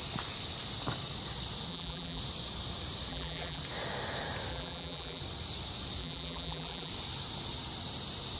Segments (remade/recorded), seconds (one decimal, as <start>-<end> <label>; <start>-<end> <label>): 0.0-1.7 recorded; 1.7-2.2 remade; 2.2-3.1 recorded; 3.1-3.6 remade; 3.6-4.5 recorded; 4.5-5.2 remade; 5.2-6.0 recorded; 6.0-6.9 remade; 6.9-8.4 recorded